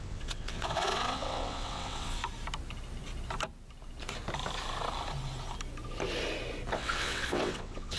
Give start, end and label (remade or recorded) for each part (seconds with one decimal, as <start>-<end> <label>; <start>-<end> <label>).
0.0-2.2 remade; 2.2-6.7 recorded; 6.7-8.0 remade